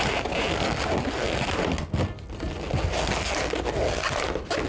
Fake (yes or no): no